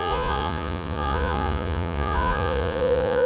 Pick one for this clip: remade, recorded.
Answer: remade